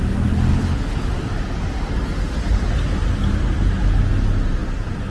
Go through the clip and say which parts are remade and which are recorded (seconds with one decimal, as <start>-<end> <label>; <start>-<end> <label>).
0.0-0.5 recorded; 0.5-1.1 remade; 1.1-5.1 recorded